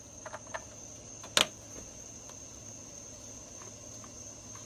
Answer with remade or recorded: recorded